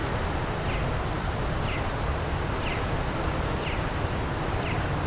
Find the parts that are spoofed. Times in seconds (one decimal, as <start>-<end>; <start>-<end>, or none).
none